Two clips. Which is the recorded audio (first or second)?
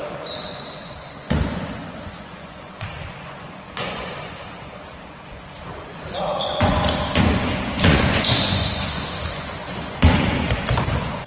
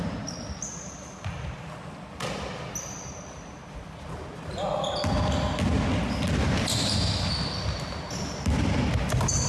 second